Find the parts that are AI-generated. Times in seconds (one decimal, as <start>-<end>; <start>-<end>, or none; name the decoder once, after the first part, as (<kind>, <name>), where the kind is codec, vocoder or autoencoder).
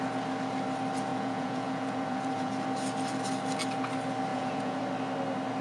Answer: 1.1-2.5 (vocoder, Vocos); 4.3-4.8